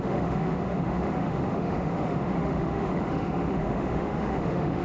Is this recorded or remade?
remade